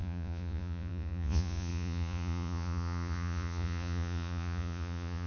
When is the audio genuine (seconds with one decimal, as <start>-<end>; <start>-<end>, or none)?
none